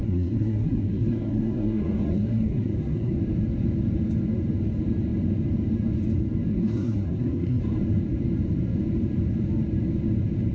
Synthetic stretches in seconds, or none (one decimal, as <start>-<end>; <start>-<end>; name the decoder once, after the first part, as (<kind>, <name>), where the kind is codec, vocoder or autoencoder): 0.0-3.1 (codec, SNAC); 6.5-7.6